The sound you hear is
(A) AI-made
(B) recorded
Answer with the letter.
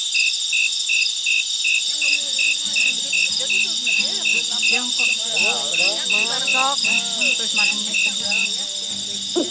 B